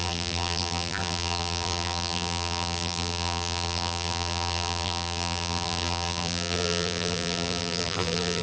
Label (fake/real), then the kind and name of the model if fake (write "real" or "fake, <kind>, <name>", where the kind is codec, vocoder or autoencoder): fake, vocoder, BigVGAN v2